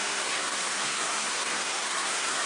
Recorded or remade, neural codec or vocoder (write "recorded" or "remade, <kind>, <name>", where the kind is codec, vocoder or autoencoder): remade, codec, SNAC